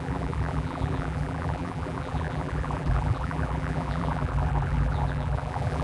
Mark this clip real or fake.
fake